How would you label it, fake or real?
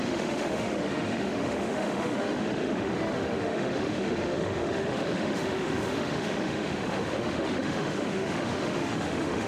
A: fake